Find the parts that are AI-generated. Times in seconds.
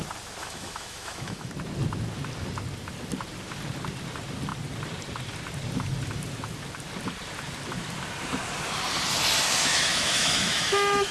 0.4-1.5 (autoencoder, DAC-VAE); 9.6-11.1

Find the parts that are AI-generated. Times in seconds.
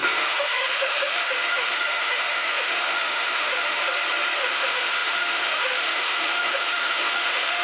0.0-3.8 (autoencoder, DAC-VAE); 4.4-7.6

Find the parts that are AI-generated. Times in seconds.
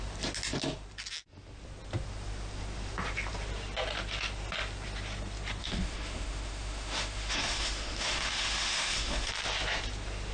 5.6-9.3 (autoencoder, DAC-VAE)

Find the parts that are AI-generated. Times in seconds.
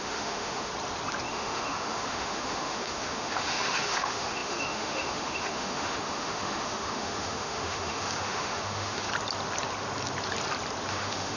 0.0-0.7 (autoencoder, DAC-VAE); 1.3-9.1; 10.9-11.4